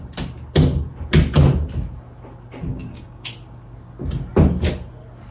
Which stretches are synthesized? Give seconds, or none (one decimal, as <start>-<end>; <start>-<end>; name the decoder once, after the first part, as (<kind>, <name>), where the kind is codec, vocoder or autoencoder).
2.7-3.3 (codec, DAC)